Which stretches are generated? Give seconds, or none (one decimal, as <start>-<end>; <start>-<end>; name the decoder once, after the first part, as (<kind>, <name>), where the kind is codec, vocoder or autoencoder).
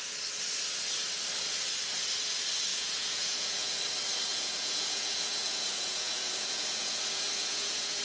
2.7-3.8 (vocoder, Vocos); 4.3-8.0